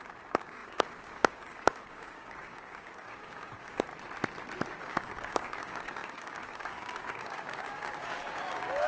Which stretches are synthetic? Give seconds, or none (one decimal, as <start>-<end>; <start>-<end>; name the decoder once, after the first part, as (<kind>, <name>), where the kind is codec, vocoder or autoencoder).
0.0-3.9 (codec, DAC); 4.8-8.9